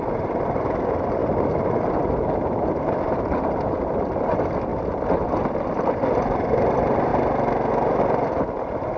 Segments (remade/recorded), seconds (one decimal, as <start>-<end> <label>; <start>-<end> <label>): 0.0-1.2 remade; 1.2-1.9 recorded; 1.9-7.1 remade; 7.1-8.0 recorded; 8.0-9.0 remade